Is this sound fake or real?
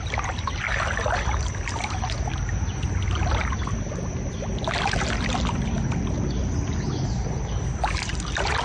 real